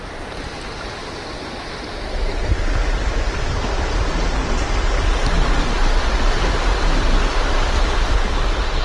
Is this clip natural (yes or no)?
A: yes